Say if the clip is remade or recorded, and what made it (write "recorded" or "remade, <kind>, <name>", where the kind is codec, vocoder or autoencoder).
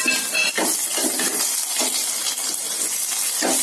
recorded